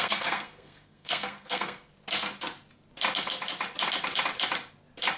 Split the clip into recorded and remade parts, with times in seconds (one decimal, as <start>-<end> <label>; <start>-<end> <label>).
0.0-1.9 remade; 1.9-5.2 recorded